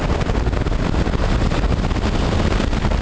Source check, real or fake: real